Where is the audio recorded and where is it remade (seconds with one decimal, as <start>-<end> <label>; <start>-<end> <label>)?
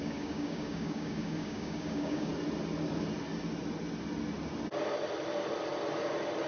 0.0-2.3 remade; 2.3-6.5 recorded